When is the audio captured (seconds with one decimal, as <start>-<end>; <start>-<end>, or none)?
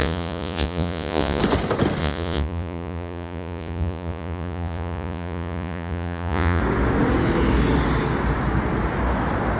1.4-2.0; 6.6-9.6